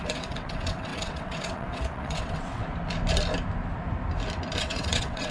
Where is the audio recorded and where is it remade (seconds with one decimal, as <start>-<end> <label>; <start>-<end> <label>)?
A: 0.0-2.6 remade; 2.6-4.6 recorded; 4.6-5.3 remade